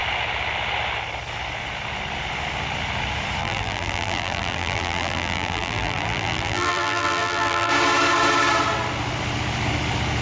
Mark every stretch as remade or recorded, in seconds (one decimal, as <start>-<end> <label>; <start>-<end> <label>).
0.0-3.4 recorded; 3.4-7.7 remade; 7.7-10.2 recorded